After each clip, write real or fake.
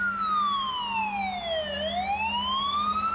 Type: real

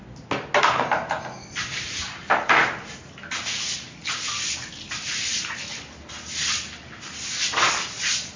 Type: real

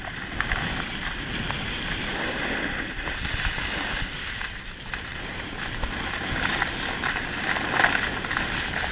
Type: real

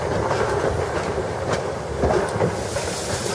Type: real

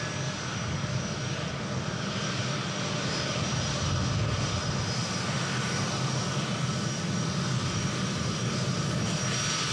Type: real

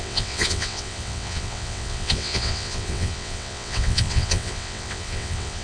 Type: fake